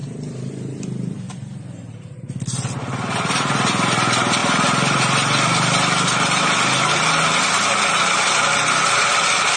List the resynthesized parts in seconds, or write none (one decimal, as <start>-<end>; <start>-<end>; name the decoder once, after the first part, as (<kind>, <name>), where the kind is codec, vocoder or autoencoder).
none